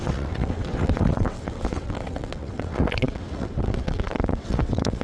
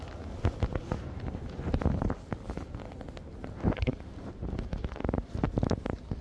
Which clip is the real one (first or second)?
second